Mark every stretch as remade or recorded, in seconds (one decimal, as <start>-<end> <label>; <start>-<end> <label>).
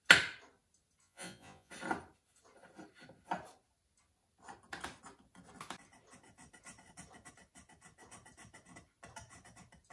0.0-1.0 recorded; 1.0-1.7 remade; 1.7-9.9 recorded